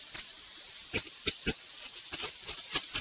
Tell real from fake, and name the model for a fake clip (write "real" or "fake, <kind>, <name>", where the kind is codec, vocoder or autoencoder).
real